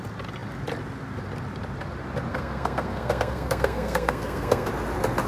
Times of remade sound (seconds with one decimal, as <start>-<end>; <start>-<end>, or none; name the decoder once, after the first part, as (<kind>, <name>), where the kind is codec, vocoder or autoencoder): 2.3-4.7 (codec, SNAC)